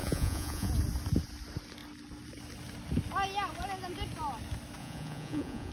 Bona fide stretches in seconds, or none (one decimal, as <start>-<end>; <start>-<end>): 0.7-4.8